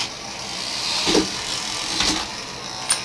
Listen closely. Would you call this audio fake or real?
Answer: real